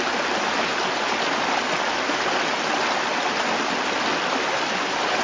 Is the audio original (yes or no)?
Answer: yes